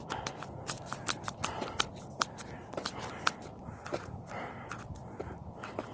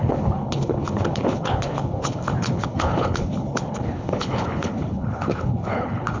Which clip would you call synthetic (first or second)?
second